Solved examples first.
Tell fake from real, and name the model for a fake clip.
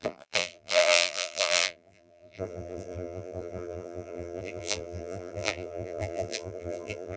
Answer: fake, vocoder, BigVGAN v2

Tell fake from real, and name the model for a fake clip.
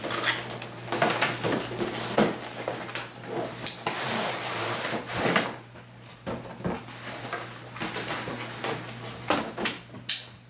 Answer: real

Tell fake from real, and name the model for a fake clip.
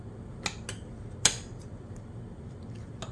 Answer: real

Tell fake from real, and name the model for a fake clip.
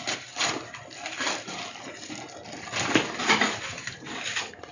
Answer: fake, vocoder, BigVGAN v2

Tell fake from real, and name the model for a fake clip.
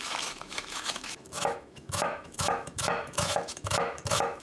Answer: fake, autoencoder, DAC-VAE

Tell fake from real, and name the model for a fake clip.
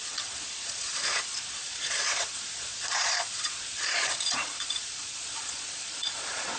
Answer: fake, vocoder, Vocos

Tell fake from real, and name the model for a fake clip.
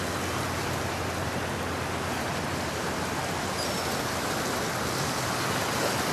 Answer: real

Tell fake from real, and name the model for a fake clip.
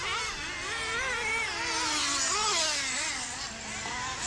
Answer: real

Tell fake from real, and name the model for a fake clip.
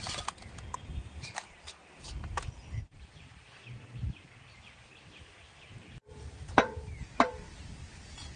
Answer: fake, vocoder, BigVGAN v2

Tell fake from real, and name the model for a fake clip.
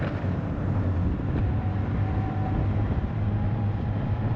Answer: real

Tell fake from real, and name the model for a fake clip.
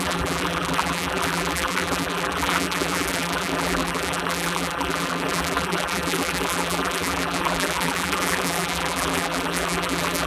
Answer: fake, vocoder, BigVGAN v2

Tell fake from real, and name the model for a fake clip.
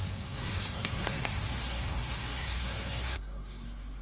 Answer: fake, codec, SNAC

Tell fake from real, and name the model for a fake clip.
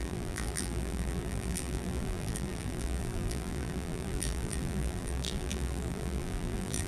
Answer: fake, vocoder, BigVGAN v2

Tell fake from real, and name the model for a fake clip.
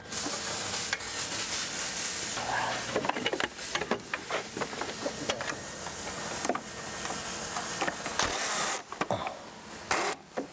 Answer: real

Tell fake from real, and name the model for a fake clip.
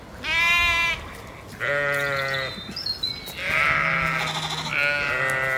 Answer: real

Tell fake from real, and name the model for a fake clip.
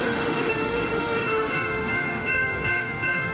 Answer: fake, autoencoder, DAC-VAE